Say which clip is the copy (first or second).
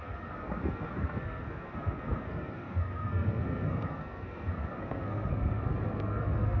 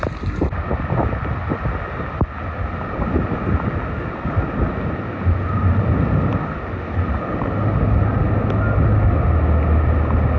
first